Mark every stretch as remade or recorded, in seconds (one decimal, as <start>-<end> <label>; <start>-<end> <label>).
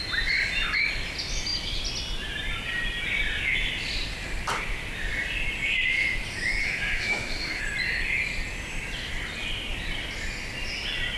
0.0-6.6 recorded; 6.6-7.6 remade; 7.6-11.2 recorded